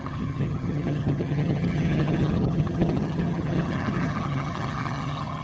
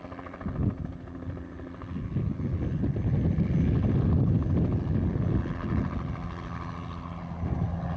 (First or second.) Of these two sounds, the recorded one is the second